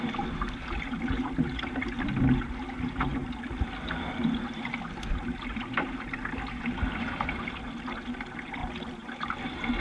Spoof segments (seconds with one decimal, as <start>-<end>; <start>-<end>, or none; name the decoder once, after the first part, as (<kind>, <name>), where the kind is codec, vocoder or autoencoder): none